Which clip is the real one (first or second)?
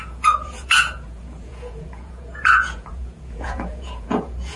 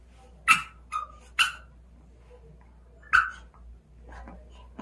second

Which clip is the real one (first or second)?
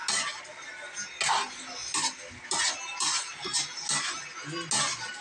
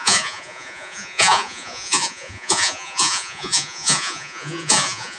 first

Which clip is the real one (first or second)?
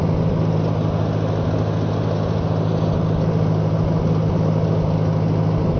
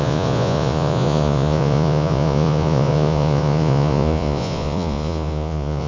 first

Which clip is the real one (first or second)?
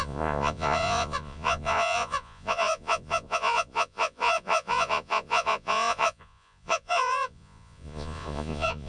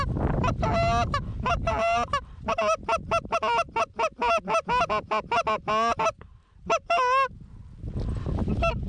second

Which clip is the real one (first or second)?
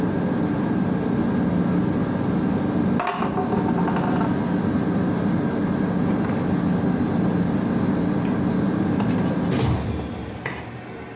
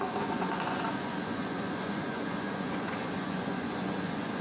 first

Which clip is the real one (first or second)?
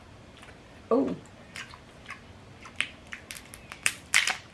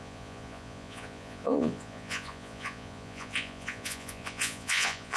first